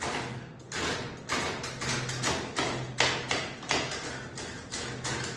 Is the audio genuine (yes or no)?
yes